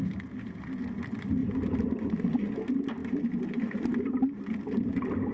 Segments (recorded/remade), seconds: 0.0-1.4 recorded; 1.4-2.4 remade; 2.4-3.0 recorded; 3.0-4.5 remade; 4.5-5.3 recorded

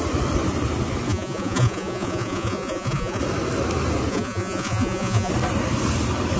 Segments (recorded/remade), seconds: 0.0-1.1 recorded; 1.1-3.2 remade; 3.2-4.1 recorded; 4.1-5.3 remade; 5.3-6.4 recorded

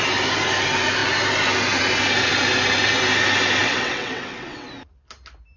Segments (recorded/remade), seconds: 0.0-3.6 recorded; 3.6-4.7 remade; 4.7-5.6 recorded

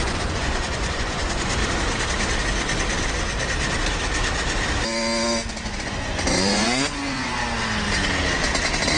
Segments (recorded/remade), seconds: 0.0-1.6 remade; 1.6-5.5 recorded; 5.5-7.4 remade; 7.4-9.0 recorded

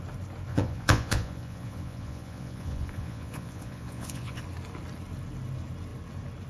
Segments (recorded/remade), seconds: 0.0-0.5 recorded; 0.5-4.4 remade; 4.4-6.5 recorded

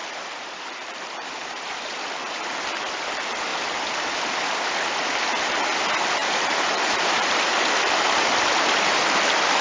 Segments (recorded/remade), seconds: 0.0-2.4 remade; 2.4-6.2 recorded; 6.2-8.5 remade; 8.5-9.6 recorded

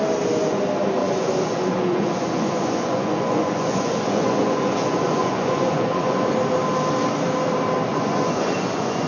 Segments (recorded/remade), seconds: 0.0-1.0 recorded; 1.0-6.3 remade; 6.3-7.9 recorded; 7.9-9.1 remade

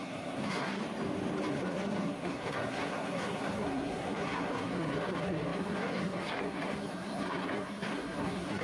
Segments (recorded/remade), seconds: 0.0-0.8 remade; 0.8-1.5 recorded; 1.5-8.6 remade